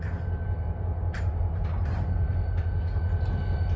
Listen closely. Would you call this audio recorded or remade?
recorded